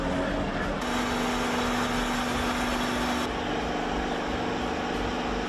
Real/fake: real